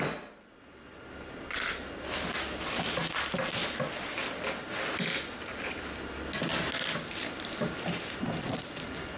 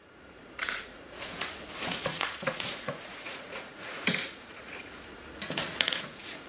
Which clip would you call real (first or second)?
first